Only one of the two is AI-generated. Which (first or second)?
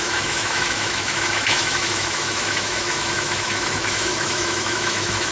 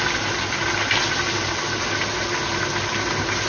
first